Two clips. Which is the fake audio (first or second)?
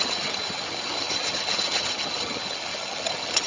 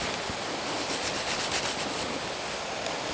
first